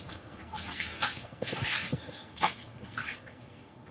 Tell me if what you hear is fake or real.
fake